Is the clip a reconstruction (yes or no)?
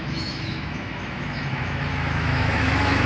yes